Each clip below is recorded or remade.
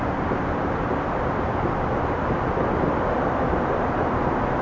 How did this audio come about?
recorded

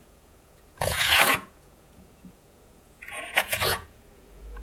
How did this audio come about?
remade